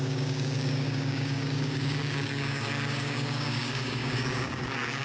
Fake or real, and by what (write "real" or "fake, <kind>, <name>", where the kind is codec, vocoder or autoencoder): fake, codec, DAC